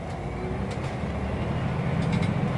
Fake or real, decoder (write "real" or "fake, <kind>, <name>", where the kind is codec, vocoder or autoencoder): real